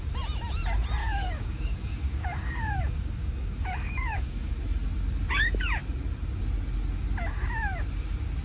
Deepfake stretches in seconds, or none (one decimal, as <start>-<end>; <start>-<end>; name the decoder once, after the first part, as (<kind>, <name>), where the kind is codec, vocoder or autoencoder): 1.0-4.5 (codec, DAC)